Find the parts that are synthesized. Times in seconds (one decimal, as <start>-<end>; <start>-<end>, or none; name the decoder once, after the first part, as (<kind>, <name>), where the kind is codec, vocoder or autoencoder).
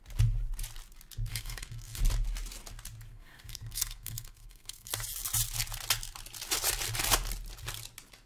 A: 1.3-2.0 (codec, SNAC); 3.1-4.9